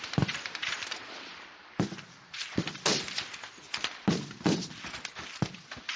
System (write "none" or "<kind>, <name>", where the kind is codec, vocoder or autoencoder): none